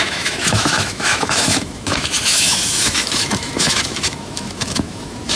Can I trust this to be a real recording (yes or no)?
no